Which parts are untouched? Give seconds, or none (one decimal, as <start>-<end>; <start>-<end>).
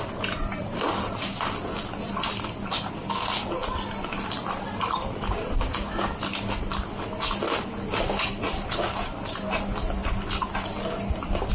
0.0-11.5